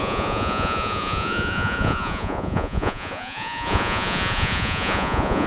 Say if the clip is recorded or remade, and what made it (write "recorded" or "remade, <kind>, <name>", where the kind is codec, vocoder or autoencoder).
remade, vocoder, Vocos